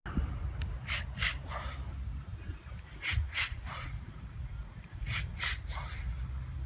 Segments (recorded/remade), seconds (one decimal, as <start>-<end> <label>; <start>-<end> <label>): 0.0-3.2 recorded; 3.2-5.4 remade; 5.4-6.7 recorded